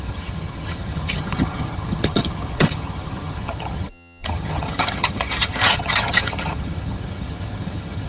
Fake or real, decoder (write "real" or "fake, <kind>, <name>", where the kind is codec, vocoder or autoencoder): fake, vocoder, HiFi-GAN